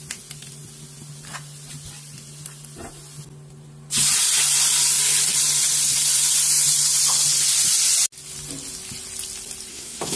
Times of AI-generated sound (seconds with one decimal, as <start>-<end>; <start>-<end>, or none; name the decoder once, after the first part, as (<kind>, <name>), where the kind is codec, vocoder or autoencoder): 9.7-10.2 (codec, SNAC)